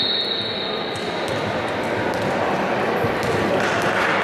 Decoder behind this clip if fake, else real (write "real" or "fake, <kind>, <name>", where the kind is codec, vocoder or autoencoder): real